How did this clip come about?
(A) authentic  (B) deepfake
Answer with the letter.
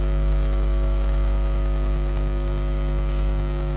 B